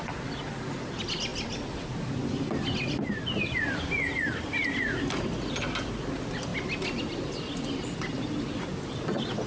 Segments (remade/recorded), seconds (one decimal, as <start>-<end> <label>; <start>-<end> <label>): 0.0-9.5 recorded